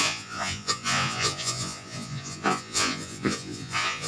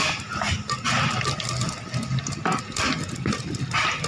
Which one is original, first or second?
second